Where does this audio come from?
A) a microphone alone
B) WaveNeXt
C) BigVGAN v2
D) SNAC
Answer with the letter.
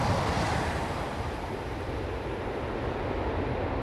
A